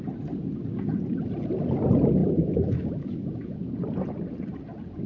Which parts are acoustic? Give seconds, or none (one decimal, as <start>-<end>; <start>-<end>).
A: 0.0-2.2; 3.7-5.1

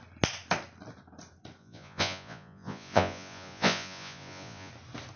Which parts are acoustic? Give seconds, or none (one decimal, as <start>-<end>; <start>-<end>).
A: 0.0-1.6; 4.7-5.2